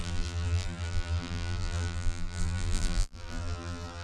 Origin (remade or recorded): remade